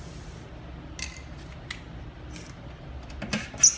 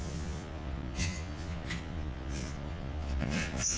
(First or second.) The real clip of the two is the first